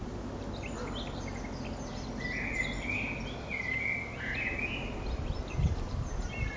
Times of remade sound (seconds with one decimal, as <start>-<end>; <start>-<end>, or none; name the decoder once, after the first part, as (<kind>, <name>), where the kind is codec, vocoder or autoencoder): none